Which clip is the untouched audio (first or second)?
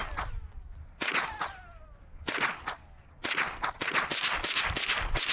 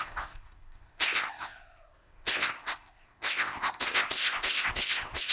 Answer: first